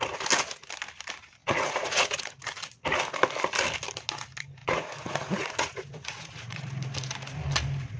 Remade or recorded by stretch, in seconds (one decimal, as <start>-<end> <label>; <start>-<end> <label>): 0.0-1.4 recorded; 1.4-2.4 remade; 2.4-4.6 recorded; 4.6-6.9 remade; 6.9-8.0 recorded